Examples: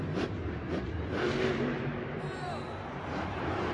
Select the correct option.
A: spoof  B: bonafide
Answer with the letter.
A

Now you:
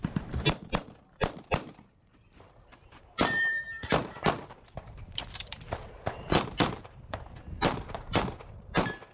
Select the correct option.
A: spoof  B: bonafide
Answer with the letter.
A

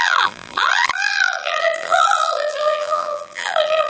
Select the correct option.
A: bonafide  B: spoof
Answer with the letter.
B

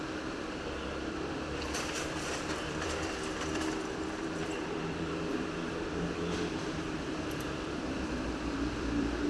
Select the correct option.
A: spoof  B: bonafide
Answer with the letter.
A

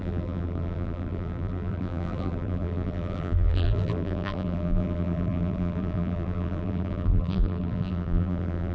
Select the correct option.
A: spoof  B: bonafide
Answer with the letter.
A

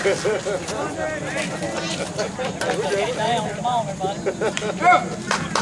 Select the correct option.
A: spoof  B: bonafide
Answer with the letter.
A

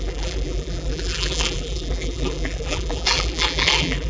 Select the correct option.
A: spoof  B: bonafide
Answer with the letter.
A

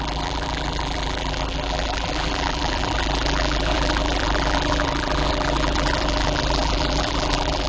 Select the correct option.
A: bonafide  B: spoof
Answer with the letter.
B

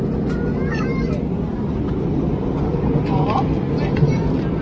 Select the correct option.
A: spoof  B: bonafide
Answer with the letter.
B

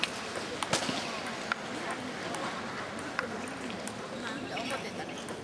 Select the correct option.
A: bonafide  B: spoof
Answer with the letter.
A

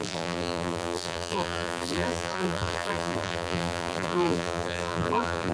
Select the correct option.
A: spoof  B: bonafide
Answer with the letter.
A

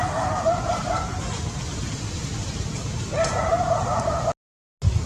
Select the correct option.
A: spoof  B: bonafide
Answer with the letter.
B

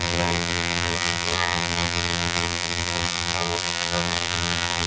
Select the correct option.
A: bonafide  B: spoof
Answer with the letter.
B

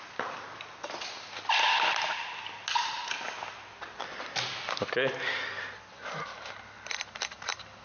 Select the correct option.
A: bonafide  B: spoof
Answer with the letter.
A